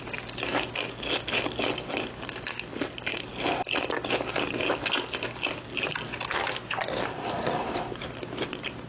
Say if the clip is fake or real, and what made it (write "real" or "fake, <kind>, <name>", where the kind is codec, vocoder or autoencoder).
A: real